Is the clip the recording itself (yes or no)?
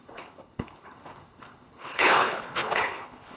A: no